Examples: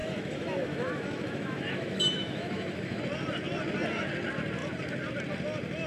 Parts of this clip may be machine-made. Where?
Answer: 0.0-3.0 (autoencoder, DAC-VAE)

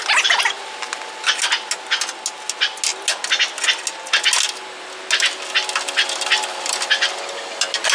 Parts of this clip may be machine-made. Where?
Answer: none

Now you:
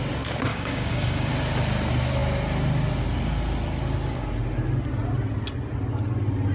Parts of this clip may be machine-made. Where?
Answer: 0.5-1.3 (codec, DAC)

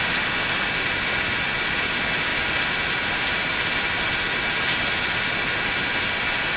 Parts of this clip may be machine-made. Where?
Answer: none